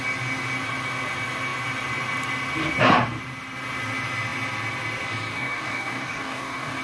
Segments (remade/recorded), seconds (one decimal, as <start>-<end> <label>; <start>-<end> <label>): 0.0-5.3 recorded; 5.3-6.8 remade